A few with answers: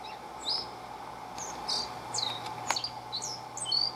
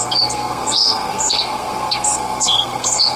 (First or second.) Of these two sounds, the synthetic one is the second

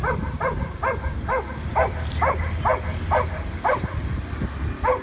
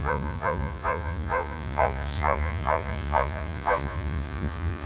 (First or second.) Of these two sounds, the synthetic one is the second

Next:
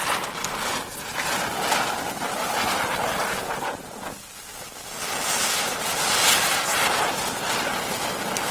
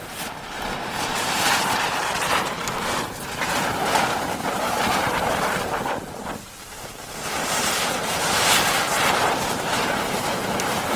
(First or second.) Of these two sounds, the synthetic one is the second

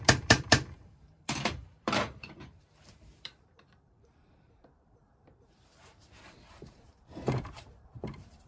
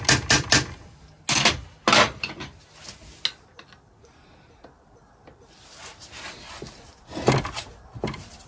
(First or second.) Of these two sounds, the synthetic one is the first